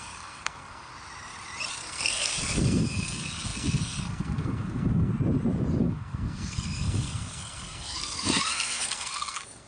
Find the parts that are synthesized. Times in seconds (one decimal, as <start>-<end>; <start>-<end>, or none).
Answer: 0.0-0.9; 1.7-5.1; 5.8-9.7